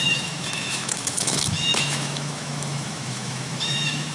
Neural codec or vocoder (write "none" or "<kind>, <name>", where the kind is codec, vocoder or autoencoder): autoencoder, DAC-VAE